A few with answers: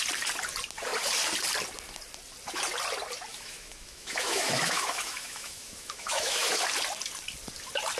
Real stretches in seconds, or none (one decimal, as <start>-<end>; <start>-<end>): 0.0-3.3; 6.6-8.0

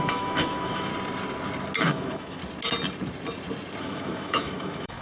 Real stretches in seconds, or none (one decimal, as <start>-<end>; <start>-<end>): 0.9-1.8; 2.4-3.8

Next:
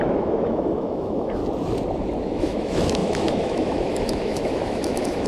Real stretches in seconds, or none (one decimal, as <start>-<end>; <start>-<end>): 1.4-2.2

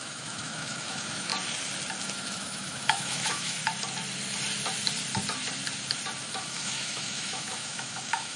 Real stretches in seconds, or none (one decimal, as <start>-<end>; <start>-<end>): 1.3-2.0; 3.6-6.3

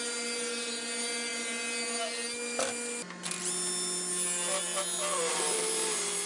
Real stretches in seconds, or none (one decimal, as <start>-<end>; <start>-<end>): 0.0-6.3

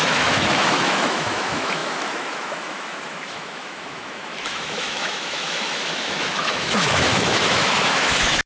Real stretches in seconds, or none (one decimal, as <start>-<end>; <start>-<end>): none

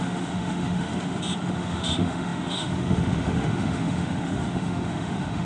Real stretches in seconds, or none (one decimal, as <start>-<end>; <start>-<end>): 0.9-1.5